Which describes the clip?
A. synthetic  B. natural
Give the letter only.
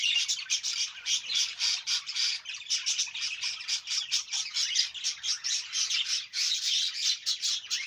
A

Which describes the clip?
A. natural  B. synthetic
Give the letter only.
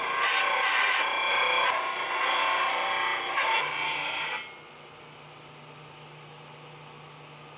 A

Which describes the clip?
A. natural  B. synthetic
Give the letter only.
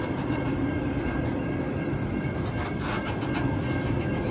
B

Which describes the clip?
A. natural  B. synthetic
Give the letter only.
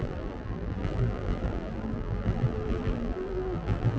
B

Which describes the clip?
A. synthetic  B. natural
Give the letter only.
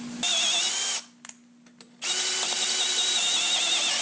B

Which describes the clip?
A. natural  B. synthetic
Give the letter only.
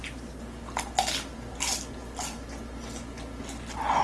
A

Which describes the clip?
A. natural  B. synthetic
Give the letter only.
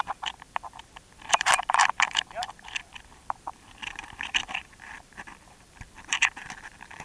B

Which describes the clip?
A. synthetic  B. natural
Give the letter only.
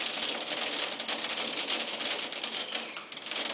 B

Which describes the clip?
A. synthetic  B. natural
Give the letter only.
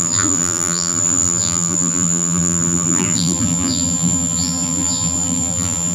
A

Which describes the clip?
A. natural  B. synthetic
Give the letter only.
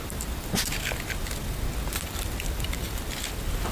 A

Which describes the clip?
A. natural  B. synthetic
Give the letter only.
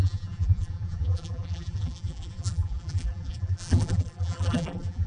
B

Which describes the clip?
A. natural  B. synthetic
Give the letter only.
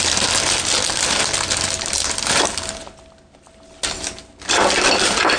A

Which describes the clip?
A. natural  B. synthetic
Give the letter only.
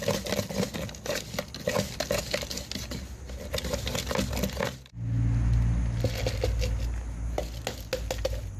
A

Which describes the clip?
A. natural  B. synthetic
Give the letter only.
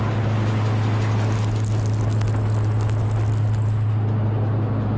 A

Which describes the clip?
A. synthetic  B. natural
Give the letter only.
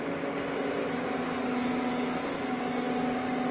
B